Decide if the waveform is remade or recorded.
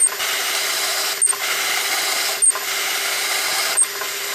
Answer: recorded